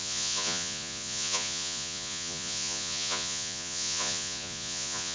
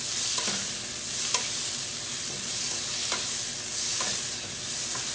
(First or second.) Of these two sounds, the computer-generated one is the first